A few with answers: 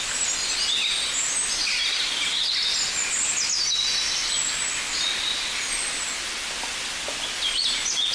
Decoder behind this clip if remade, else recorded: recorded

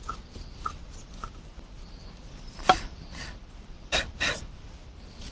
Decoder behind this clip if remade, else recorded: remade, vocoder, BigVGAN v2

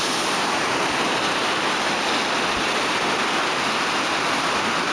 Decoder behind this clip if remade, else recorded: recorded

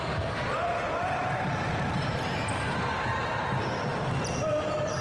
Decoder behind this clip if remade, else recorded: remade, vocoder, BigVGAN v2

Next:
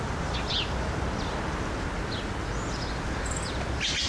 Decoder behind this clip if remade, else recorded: recorded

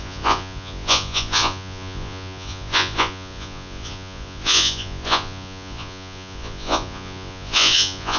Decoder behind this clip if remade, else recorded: remade, vocoder, Vocos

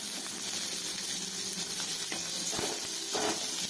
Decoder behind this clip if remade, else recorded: recorded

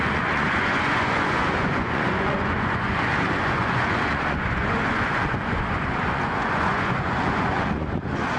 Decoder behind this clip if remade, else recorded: remade, vocoder, Vocos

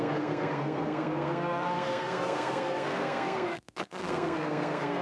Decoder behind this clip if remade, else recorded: remade, codec, SNAC